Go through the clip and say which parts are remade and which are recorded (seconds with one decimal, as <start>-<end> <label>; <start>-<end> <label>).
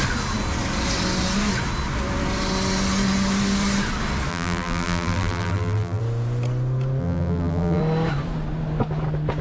0.0-4.3 recorded; 4.3-6.0 remade; 6.0-7.0 recorded; 7.0-7.8 remade; 7.8-9.4 recorded